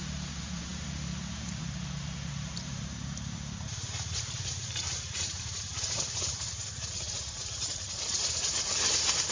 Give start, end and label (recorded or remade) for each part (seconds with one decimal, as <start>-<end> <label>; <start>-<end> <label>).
0.0-9.3 remade